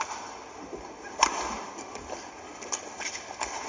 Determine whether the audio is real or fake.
real